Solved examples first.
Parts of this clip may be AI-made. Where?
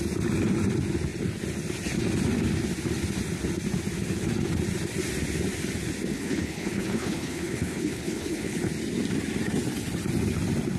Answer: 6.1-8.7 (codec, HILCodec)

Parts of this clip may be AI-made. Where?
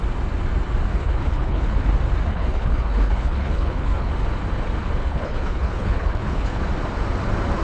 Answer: 0.9-1.9 (codec, HILCodec); 2.3-4.1; 5.0-6.6